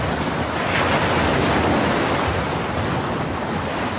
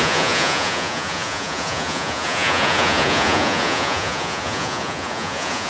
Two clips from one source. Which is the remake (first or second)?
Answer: second